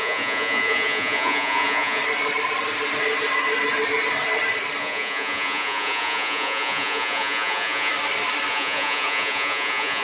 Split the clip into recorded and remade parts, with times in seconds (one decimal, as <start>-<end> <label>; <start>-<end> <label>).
0.0-2.0 remade; 2.0-4.8 recorded; 4.8-7.9 remade; 7.9-8.5 recorded; 8.5-10.0 remade